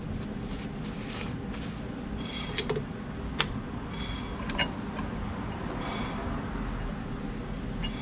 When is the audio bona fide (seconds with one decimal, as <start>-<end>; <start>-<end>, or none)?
0.0-8.0